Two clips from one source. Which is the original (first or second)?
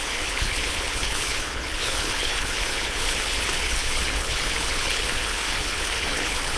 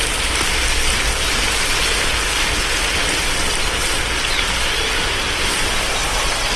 second